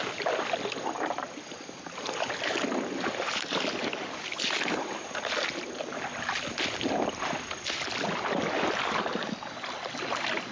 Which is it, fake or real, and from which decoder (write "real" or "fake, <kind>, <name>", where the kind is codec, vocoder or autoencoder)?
real